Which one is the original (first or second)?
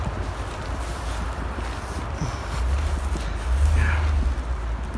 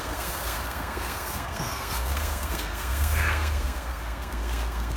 first